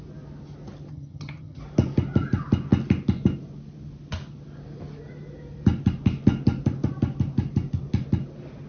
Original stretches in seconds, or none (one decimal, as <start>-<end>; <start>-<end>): 0.0-0.9; 1.6-8.7